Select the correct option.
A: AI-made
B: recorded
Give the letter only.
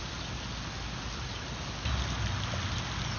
B